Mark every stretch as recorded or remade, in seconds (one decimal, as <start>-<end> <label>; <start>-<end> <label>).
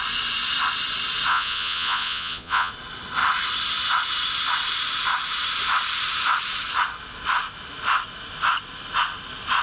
0.0-1.3 recorded; 1.3-2.7 remade; 2.7-9.6 recorded